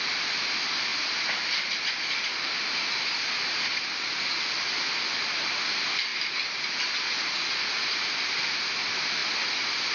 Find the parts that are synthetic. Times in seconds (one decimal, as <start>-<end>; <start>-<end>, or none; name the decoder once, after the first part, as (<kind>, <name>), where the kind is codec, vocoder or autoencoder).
none